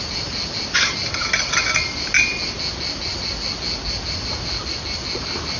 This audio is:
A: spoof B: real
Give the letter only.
B